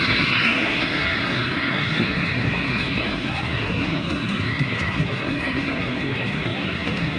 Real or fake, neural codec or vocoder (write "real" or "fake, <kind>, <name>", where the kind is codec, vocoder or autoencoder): fake, codec, SNAC